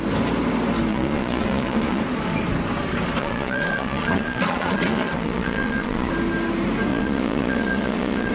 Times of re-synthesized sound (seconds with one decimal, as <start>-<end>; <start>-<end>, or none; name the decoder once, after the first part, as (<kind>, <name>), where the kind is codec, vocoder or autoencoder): 0.9-2.0 (vocoder, Vocos); 3.2-6.1; 6.9-8.3